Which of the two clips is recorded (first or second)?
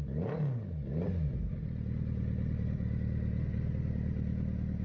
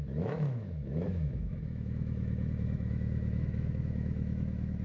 first